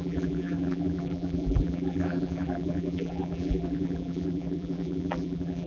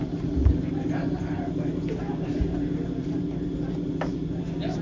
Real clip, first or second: second